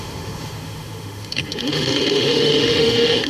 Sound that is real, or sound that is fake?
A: fake